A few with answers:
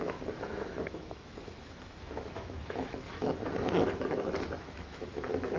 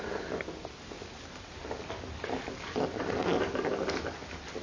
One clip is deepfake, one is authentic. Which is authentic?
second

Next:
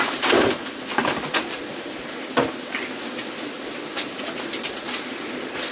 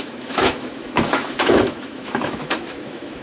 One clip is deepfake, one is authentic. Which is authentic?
first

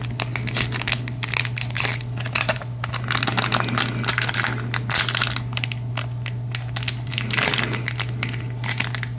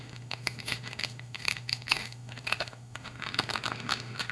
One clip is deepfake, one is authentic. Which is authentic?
first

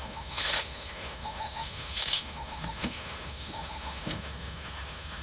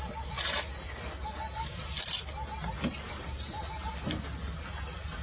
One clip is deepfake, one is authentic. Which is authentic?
second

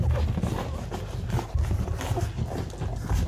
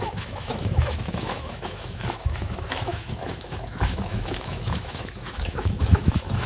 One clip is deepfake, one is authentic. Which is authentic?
first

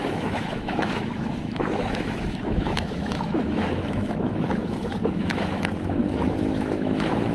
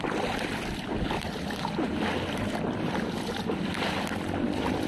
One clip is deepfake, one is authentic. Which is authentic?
second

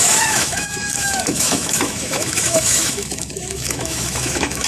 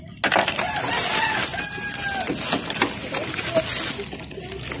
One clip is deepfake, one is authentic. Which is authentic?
second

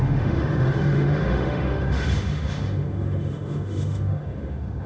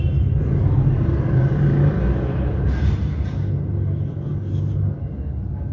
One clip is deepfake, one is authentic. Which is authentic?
second